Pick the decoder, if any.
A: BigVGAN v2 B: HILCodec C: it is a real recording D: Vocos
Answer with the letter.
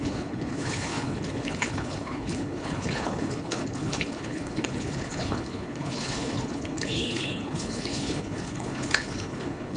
B